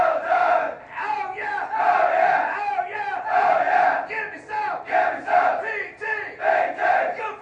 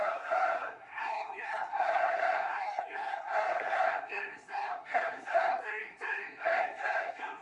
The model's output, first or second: second